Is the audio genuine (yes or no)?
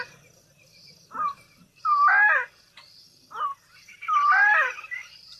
no